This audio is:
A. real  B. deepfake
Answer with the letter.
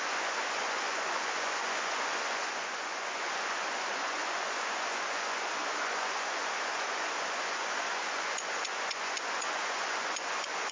B